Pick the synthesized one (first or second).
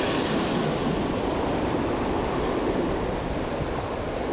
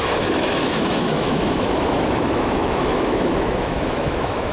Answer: second